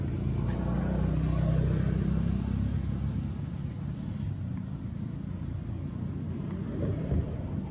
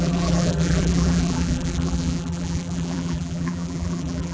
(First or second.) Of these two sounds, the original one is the first